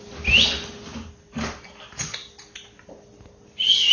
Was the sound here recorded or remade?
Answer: recorded